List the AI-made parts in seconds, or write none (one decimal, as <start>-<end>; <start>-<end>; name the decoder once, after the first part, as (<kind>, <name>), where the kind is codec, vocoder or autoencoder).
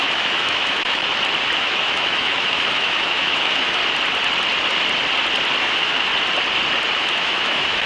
0.0-1.0 (autoencoder, DAC-VAE); 1.6-3.8; 5.6-6.1; 7.0-7.9